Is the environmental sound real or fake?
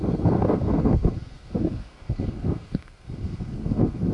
fake